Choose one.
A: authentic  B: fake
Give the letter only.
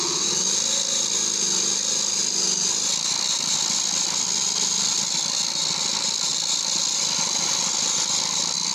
A